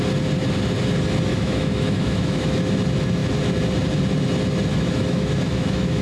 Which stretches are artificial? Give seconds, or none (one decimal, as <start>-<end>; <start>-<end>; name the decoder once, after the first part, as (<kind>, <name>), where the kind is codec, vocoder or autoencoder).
1.3-2.6 (autoencoder, DAC-VAE); 4.7-6.0